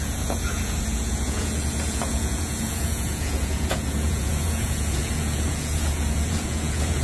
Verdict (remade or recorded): remade